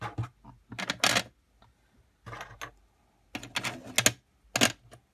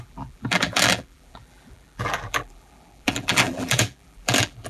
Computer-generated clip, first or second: second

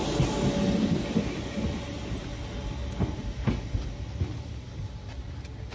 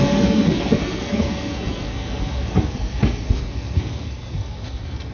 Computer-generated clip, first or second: second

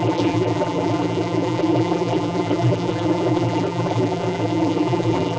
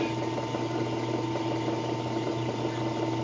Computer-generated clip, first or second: first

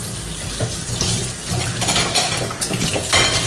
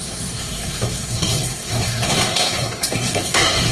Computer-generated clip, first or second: second